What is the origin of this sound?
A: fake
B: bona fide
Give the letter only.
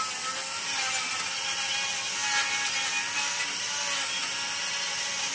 B